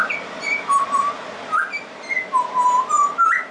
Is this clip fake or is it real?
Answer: real